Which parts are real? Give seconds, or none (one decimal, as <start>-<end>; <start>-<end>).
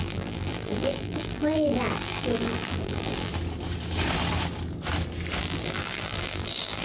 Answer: 3.3-5.4